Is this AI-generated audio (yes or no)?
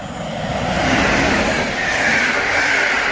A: no